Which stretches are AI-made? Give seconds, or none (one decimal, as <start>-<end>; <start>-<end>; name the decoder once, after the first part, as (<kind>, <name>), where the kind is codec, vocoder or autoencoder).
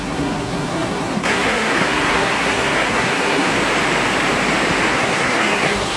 0.0-3.5 (codec, SNAC); 4.9-6.0